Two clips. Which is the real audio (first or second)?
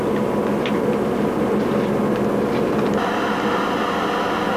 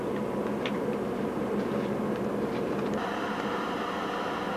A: first